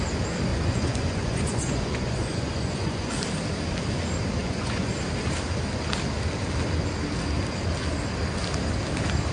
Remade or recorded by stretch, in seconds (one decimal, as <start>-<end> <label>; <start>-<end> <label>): 0.0-0.5 recorded; 0.5-3.1 remade; 3.1-4.4 recorded; 4.4-4.9 remade; 4.9-9.3 recorded